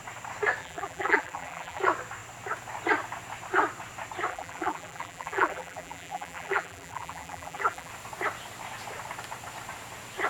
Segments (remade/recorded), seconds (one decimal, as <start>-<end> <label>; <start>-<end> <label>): 0.0-0.6 recorded; 0.6-1.8 remade; 1.8-4.3 recorded; 4.3-7.9 remade; 7.9-10.3 recorded

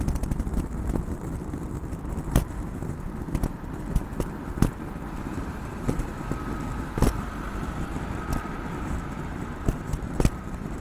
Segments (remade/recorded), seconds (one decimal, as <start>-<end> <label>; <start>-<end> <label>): 0.0-4.0 remade; 4.0-5.3 recorded; 5.3-6.1 remade; 6.1-8.7 recorded; 8.7-10.8 remade

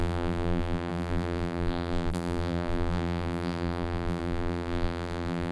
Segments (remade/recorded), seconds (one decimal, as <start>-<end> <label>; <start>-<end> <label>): 0.0-5.5 remade

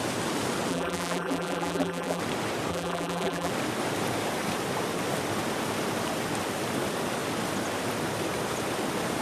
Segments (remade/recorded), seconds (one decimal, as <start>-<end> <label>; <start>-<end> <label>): 0.0-0.7 recorded; 0.7-2.2 remade; 2.2-2.7 recorded; 2.7-3.5 remade; 3.5-9.2 recorded

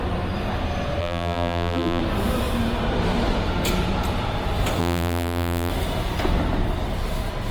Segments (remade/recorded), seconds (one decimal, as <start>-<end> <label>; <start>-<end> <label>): 0.0-1.0 recorded; 1.0-2.0 remade; 2.0-4.8 recorded; 4.8-5.7 remade; 5.7-7.5 recorded